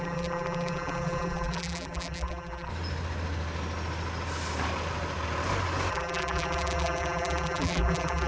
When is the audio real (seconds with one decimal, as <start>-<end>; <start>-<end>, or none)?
2.7-5.9